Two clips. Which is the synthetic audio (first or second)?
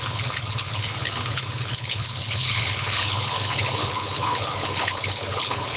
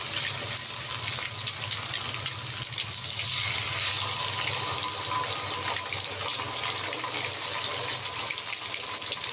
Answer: first